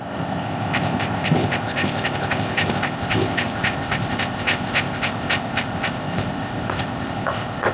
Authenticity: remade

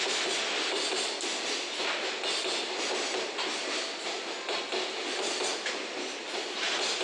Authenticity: recorded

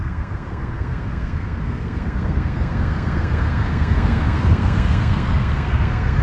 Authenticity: remade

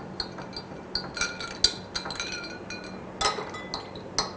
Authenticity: recorded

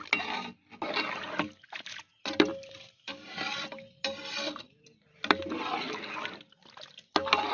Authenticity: recorded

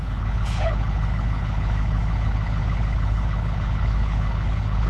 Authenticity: remade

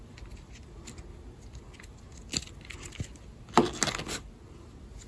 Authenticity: recorded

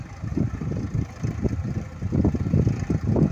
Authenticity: recorded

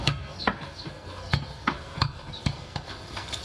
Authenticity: remade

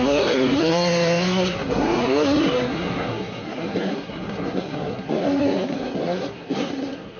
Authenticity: remade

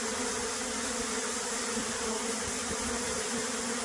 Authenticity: recorded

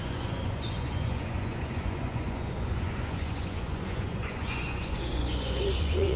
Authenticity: remade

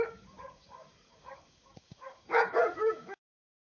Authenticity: remade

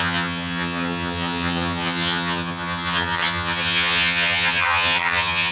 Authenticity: remade